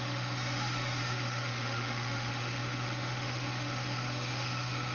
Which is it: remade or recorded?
remade